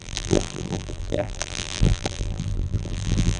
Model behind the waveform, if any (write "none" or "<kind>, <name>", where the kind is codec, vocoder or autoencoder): vocoder, BigVGAN v2